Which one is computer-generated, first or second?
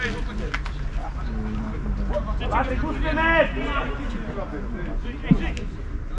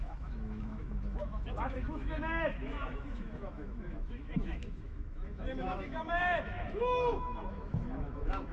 second